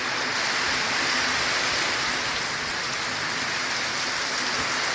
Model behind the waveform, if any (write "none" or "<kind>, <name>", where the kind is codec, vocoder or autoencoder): none